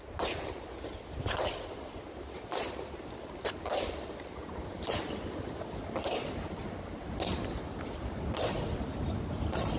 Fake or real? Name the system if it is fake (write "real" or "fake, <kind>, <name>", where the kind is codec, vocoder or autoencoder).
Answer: real